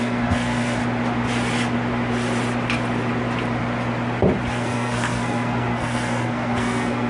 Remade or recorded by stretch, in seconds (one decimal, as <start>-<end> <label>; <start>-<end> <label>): 0.0-0.8 remade; 0.8-4.5 recorded; 4.5-7.1 remade